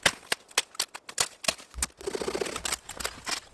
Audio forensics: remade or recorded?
recorded